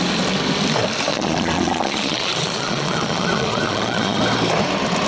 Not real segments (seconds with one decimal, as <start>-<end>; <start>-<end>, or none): 1.1-4.2